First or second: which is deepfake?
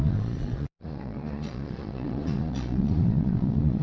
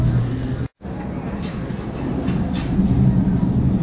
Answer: first